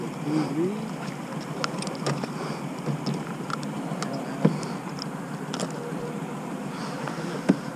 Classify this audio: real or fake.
real